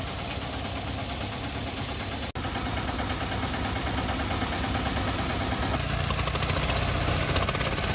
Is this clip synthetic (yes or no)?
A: no